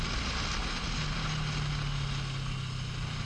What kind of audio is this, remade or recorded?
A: recorded